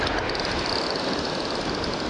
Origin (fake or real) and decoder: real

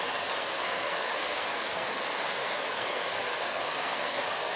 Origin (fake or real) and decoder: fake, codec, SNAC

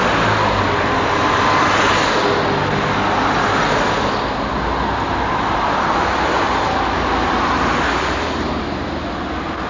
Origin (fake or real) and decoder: real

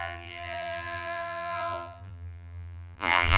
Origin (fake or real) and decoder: fake, vocoder, BigVGAN v2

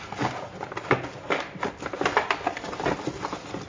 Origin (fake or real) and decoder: real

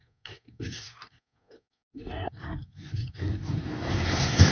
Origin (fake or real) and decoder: fake, codec, SNAC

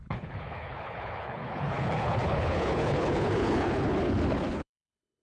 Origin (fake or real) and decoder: fake, codec, HILCodec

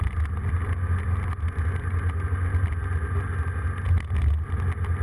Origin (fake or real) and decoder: real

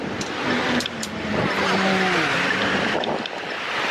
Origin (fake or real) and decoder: fake, vocoder, BigVGAN v2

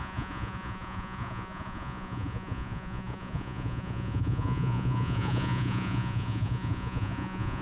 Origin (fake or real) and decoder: fake, vocoder, Vocos